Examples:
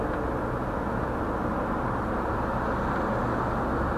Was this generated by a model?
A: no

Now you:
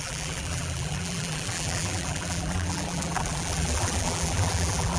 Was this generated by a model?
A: yes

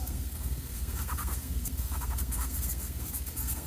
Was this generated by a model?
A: yes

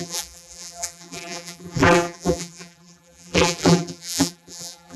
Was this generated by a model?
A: yes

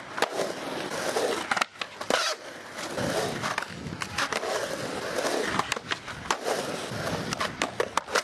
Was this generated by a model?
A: no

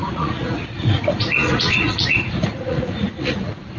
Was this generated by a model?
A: yes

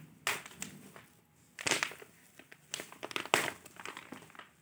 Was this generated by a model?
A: no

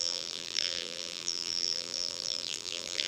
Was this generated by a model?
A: yes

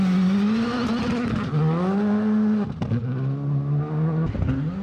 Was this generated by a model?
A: no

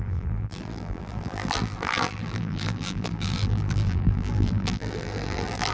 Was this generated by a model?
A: yes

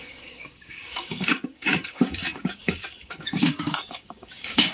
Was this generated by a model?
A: yes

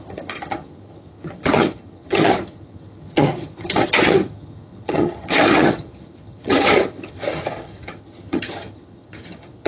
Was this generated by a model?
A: yes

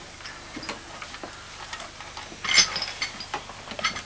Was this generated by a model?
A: no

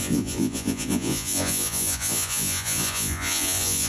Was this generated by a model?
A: yes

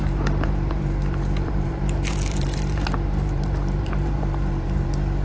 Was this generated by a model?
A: yes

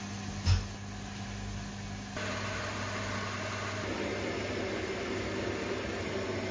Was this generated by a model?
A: no